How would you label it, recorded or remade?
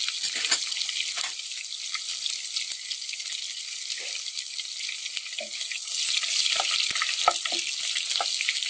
recorded